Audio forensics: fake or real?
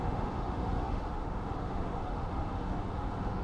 fake